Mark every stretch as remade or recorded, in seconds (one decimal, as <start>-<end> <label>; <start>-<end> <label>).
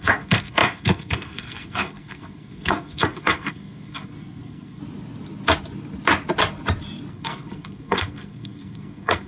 0.0-4.8 remade; 4.8-7.1 recorded; 7.1-9.3 remade